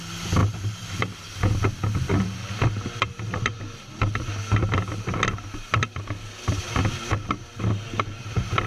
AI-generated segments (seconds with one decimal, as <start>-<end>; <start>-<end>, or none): 0.4-1.4